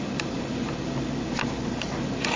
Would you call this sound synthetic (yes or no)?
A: no